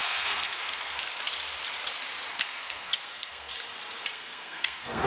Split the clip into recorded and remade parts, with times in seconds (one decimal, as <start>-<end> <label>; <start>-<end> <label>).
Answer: 0.0-1.1 remade; 1.1-2.3 recorded; 2.3-3.5 remade; 3.5-4.1 recorded; 4.1-5.1 remade